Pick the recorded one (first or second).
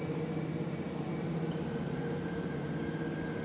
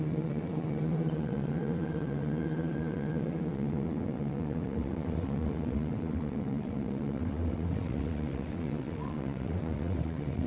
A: first